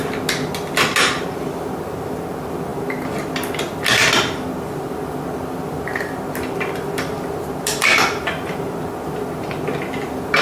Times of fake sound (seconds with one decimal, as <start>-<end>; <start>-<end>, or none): none